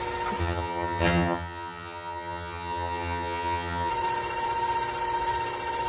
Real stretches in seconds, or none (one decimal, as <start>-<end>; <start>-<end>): 0.0-0.4; 3.9-5.9